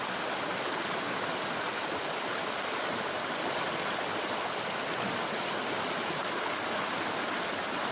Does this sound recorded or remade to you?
recorded